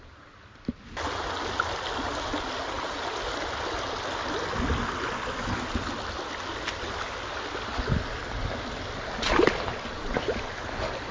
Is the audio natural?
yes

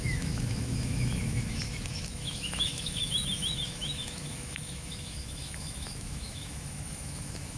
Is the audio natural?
no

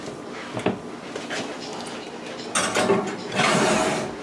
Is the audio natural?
yes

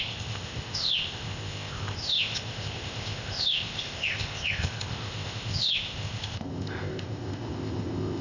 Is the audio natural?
no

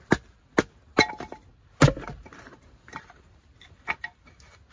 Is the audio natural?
yes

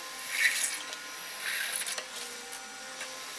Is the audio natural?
yes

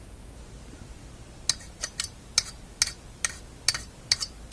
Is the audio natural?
yes